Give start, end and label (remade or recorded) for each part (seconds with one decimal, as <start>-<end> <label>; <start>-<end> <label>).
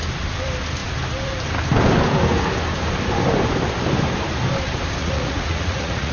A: 0.0-5.0 recorded; 5.0-6.1 remade